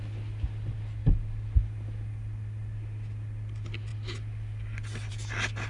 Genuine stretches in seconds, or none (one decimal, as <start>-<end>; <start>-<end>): 0.0-5.7